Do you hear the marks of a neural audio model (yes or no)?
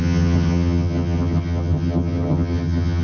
yes